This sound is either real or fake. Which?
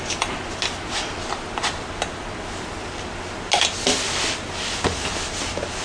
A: real